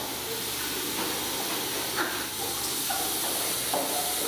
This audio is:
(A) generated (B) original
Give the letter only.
B